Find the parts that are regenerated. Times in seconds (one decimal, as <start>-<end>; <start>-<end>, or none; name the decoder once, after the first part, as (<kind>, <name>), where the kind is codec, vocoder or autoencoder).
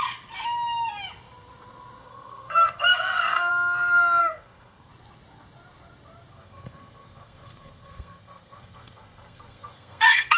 2.0-3.5 (codec, SNAC); 4.2-4.9; 6.3-10.4